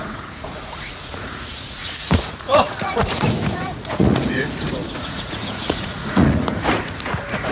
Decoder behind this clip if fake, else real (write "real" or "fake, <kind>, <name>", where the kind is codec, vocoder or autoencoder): fake, vocoder, Vocos